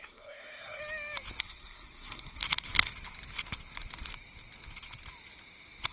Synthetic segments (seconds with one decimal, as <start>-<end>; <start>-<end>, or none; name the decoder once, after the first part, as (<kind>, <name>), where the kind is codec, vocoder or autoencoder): 0.0-0.8 (codec, SNAC); 1.4-2.4

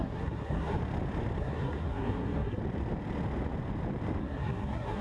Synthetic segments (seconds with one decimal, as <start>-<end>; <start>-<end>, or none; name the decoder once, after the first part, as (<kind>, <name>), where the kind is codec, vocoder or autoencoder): 0.0-0.8 (codec, SNAC); 1.4-2.6; 4.2-5.0

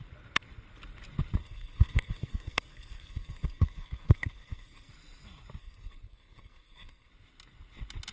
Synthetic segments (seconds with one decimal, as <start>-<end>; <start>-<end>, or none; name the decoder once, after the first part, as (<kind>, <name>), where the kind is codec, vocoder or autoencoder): 1.4-4.9 (codec, SNAC); 5.6-7.1

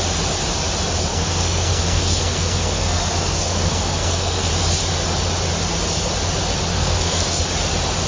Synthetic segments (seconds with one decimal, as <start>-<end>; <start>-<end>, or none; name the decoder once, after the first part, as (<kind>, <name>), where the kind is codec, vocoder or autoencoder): 1.1-4.5 (codec, SNAC); 6.7-7.4

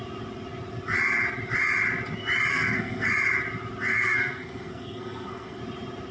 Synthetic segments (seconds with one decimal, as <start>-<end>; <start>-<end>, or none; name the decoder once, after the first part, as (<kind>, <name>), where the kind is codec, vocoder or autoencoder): 2.5-3.1 (codec, SNAC); 3.9-5.6

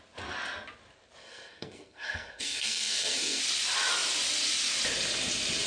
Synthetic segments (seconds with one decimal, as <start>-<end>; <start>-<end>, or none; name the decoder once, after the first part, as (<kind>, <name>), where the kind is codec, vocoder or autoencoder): 1.2-3.4 (codec, SNAC)

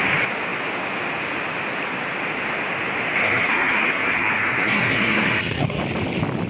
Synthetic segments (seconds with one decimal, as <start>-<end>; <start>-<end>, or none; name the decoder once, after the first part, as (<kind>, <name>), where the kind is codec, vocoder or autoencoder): 3.2-5.8 (codec, SNAC)